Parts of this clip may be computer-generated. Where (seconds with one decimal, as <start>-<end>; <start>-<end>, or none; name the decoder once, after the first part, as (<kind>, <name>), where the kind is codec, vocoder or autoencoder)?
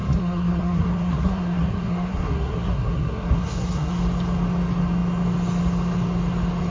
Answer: 0.0-4.0 (codec, SNAC)